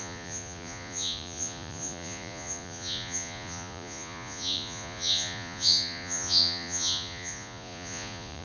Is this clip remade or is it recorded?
remade